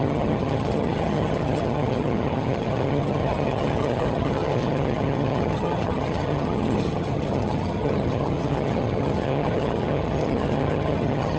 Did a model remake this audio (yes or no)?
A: yes